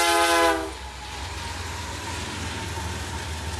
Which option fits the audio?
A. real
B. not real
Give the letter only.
A